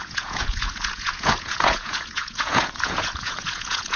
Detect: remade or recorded remade